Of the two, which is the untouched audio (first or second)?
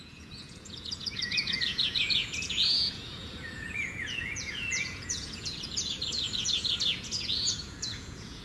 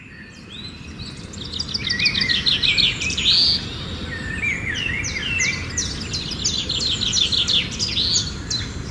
second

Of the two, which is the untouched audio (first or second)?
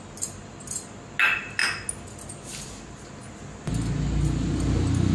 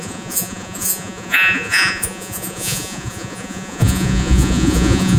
first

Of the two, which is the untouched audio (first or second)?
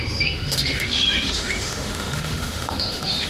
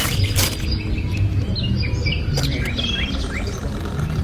second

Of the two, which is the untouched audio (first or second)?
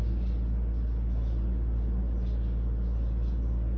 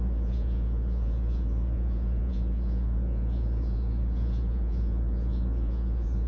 first